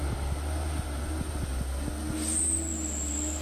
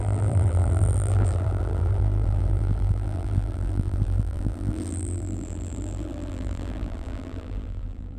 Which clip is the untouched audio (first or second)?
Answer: first